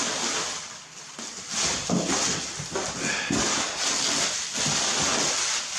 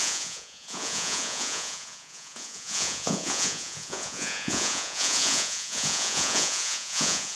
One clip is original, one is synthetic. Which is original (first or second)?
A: first